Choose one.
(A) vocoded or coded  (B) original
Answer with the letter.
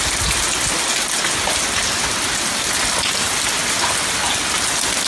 B